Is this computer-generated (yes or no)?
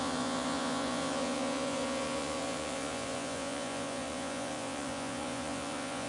yes